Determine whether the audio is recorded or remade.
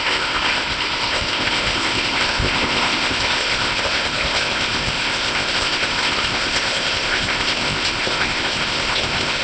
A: remade